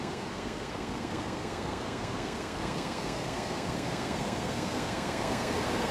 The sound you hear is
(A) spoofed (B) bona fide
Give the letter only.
A